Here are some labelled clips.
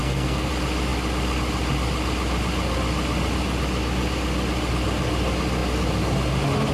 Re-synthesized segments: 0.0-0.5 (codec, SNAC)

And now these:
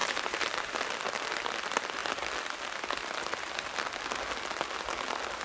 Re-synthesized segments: 0.0-0.8 (vocoder, BigVGAN v2)

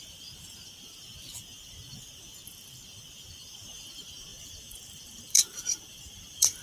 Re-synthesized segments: 4.3-6.6 (vocoder, BigVGAN v2)

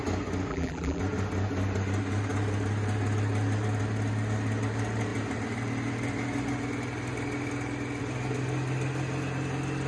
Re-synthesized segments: 0.5-1.0 (vocoder, BigVGAN v2)

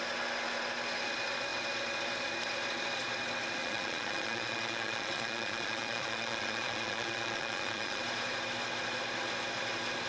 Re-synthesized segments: 3.6-8.0 (vocoder, Vocos)

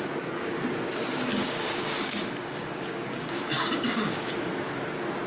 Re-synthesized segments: 1.3-4.5 (codec, DAC)

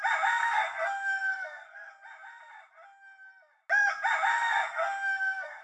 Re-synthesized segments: 0.4-1.9 (codec, SNAC); 4.3-5.6

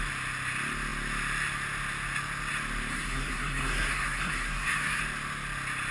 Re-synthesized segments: 2.9-5.0 (codec, SNAC)